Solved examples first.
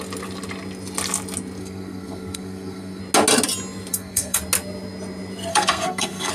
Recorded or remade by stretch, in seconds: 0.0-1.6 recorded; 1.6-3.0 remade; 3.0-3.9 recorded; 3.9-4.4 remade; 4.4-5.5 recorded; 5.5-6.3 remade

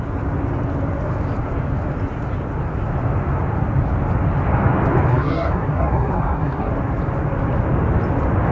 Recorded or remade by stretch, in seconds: 0.0-5.1 recorded; 5.1-6.7 remade; 6.7-8.5 recorded

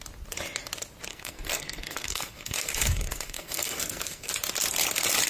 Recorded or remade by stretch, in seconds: 0.0-1.1 recorded; 1.1-4.3 remade; 4.3-5.3 recorded

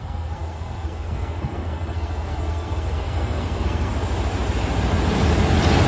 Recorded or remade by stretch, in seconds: 0.0-3.9 remade; 3.9-5.9 recorded

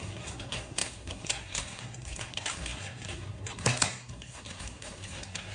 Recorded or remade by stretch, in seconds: 0.0-5.5 remade

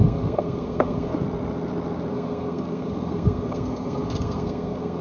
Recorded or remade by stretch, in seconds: 0.0-1.1 remade; 1.1-2.1 recorded; 2.1-5.0 remade